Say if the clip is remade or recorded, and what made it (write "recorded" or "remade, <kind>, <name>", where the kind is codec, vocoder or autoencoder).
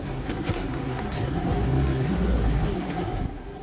remade, codec, SNAC